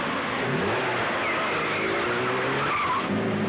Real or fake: real